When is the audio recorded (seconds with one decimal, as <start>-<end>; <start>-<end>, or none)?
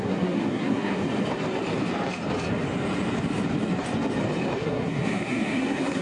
1.0-4.6